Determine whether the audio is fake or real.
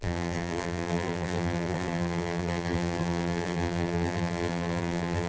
fake